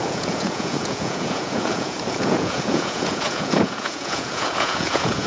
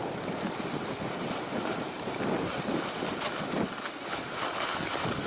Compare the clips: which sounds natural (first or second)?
second